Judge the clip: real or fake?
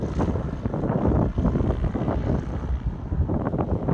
real